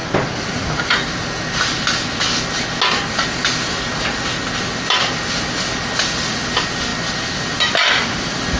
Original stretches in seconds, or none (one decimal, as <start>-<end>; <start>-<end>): 0.0-8.6